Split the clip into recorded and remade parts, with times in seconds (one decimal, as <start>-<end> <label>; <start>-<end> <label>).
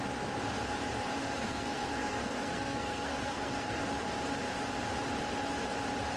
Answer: 0.0-1.2 recorded; 1.2-3.8 remade; 3.8-6.2 recorded